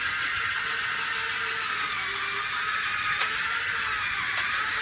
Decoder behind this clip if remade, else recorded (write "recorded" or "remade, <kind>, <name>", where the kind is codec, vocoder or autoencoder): recorded